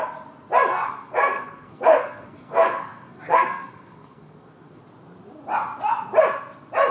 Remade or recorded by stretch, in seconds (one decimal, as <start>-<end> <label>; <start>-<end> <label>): 0.0-0.7 recorded; 0.7-4.8 remade; 4.8-6.9 recorded